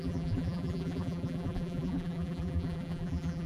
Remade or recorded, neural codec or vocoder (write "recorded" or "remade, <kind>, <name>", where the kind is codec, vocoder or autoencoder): remade, vocoder, BigVGAN v2